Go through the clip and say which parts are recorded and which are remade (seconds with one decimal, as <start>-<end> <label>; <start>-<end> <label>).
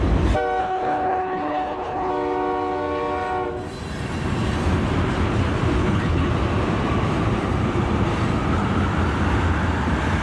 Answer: 0.0-0.6 recorded; 0.6-2.1 remade; 2.1-5.8 recorded; 5.8-6.3 remade; 6.3-10.2 recorded